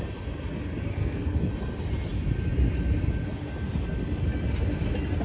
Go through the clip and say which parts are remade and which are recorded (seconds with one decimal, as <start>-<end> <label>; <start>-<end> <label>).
0.0-0.9 recorded; 0.9-1.5 remade; 1.5-5.2 recorded